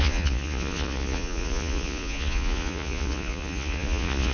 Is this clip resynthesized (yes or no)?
yes